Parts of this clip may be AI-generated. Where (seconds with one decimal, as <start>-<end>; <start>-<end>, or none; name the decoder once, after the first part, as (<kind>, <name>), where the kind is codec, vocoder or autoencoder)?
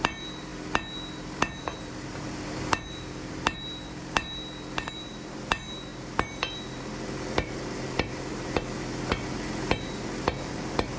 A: 0.0-11.0 (vocoder, BigVGAN v2)